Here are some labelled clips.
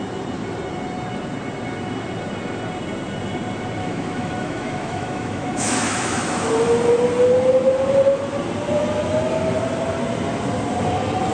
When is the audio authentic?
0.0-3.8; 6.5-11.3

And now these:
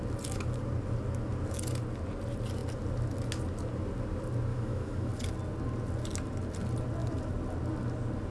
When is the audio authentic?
0.0-4.5; 5.1-8.3

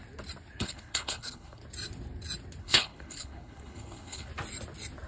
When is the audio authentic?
0.0-0.6; 1.6-2.6; 4.3-5.1

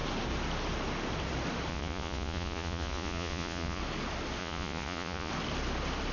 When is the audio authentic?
0.0-1.7; 3.8-4.4; 5.3-6.1

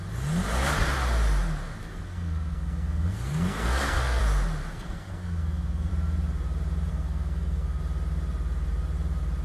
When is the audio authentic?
0.0-1.8; 4.2-4.7; 5.9-6.9; 7.8-9.4

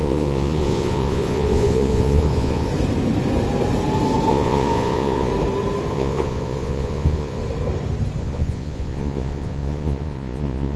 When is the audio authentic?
2.7-4.3; 5.3-5.9; 7.4-8.2

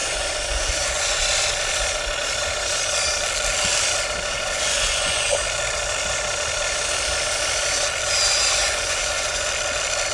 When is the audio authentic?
1.2-4.3; 5.4-8.6; 9.5-10.1